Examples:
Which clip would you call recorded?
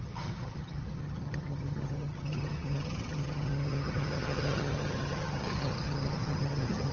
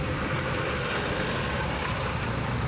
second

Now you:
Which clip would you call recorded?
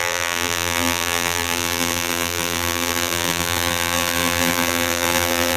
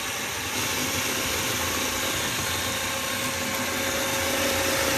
second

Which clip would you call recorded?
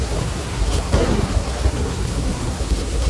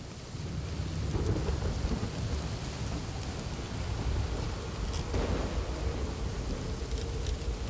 second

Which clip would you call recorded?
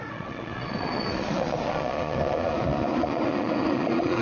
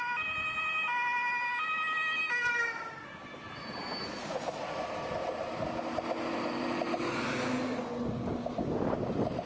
second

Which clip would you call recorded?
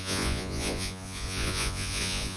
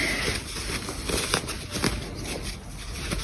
second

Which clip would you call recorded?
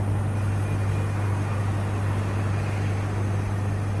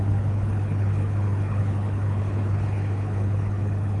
first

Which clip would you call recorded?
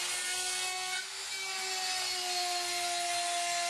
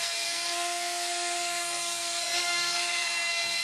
first